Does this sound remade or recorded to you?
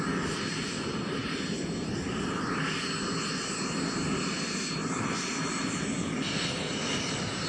recorded